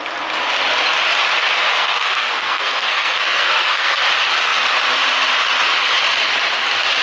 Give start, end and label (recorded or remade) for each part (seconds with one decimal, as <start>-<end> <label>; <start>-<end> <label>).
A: 0.0-1.7 recorded; 1.7-4.0 remade; 4.0-7.0 recorded